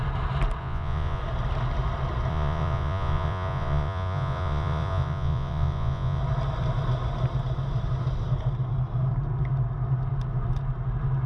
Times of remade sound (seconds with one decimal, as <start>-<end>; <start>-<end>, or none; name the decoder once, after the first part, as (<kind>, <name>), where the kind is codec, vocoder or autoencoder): 0.6-1.2 (vocoder, Vocos); 2.3-6.2